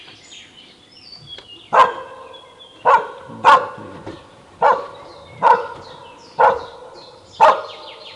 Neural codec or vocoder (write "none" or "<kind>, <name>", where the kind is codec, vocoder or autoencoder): none